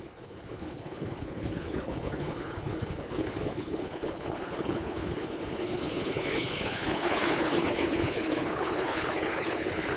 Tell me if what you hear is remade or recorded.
remade